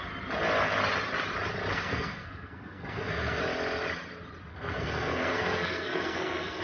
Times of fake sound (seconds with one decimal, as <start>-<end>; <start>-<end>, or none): 1.7-3.4; 4.5-6.6